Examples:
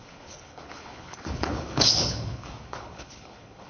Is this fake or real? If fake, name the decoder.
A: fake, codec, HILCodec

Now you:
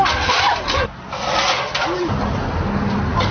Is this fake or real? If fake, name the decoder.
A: real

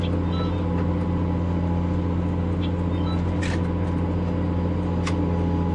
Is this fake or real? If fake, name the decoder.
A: real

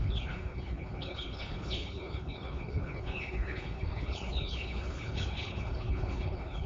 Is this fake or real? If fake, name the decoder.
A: fake, codec, HILCodec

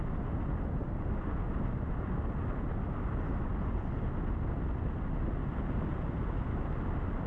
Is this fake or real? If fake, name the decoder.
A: real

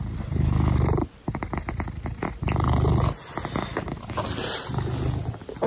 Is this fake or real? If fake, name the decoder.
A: real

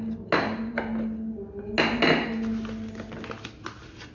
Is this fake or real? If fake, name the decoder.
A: real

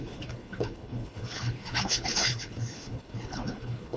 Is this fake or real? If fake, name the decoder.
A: fake, codec, HILCodec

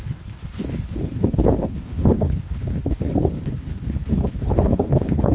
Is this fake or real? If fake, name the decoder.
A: fake, codec, HILCodec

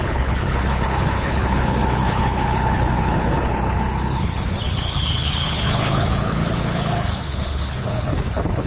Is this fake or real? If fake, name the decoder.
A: fake, codec, HILCodec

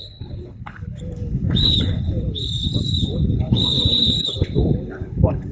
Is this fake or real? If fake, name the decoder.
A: fake, codec, HILCodec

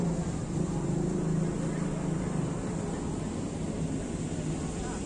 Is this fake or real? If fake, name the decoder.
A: real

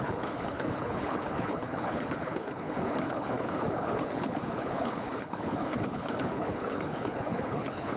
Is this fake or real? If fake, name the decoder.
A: fake, codec, HILCodec